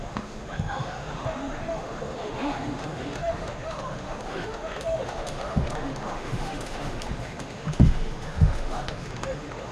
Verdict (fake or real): fake